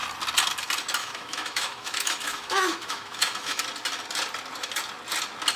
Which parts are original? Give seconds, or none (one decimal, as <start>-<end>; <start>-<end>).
0.0-1.0; 3.6-5.6